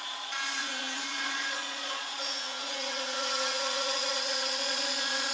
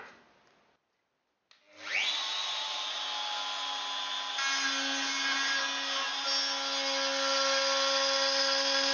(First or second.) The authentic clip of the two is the second